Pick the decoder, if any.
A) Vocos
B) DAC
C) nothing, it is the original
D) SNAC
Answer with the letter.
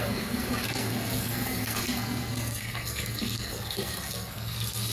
D